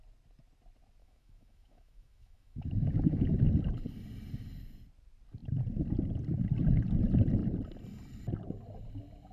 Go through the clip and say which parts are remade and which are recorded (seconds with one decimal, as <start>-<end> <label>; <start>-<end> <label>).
0.0-1.0 recorded; 1.0-3.5 remade; 3.5-9.3 recorded